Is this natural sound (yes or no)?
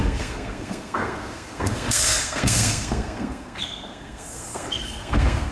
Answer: no